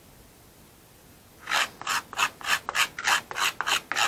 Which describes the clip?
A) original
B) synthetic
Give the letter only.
A